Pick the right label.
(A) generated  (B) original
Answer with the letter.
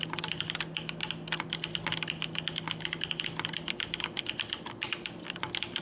B